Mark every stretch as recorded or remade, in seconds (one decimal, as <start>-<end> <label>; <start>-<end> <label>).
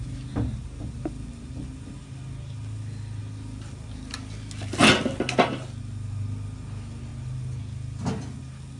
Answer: 0.0-8.8 recorded